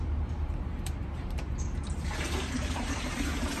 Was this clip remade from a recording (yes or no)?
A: yes